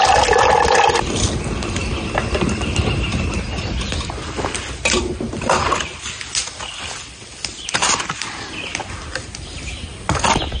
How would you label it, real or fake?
real